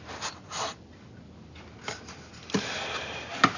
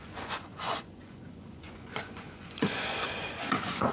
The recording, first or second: first